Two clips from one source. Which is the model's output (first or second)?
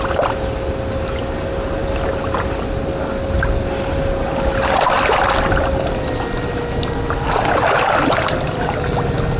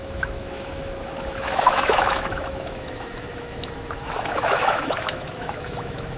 second